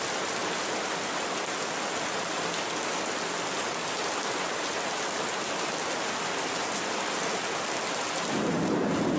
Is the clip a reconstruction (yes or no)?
no